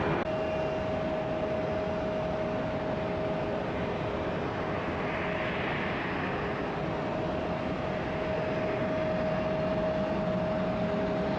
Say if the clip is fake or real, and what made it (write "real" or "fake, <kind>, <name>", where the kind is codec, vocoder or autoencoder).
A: real